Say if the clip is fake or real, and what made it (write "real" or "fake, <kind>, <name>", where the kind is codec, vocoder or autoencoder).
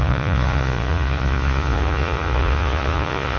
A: fake, vocoder, Vocos